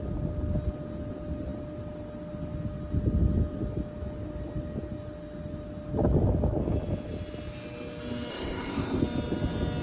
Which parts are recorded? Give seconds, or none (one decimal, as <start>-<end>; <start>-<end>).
0.0-8.3; 9.0-9.8